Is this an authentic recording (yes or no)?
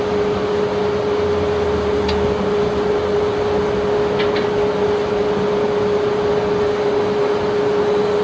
yes